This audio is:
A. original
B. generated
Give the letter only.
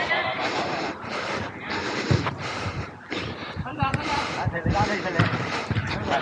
B